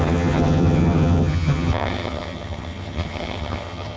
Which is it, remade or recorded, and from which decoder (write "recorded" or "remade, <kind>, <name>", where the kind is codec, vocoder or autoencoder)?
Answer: remade, vocoder, HiFi-GAN